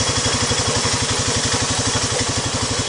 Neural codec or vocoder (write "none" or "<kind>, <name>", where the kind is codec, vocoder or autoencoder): none